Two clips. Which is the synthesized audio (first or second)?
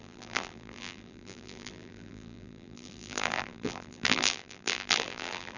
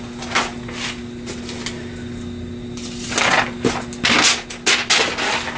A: first